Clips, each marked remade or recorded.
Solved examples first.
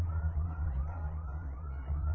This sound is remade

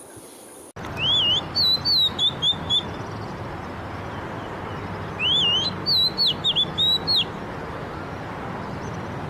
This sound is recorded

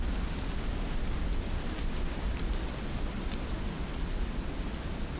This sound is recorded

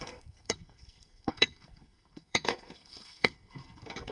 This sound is remade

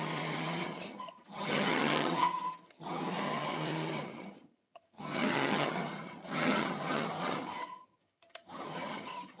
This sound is remade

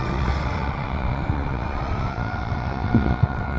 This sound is remade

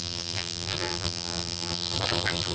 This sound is remade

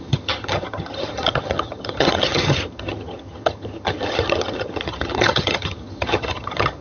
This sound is remade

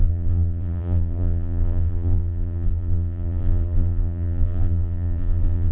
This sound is remade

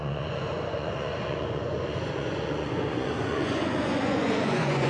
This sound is remade